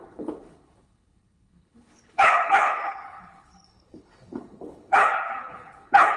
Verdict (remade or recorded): remade